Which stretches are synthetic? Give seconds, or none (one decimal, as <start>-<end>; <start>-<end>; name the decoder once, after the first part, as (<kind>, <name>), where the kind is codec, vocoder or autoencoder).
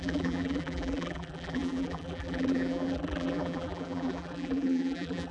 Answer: 0.0-5.3 (vocoder, BigVGAN v2)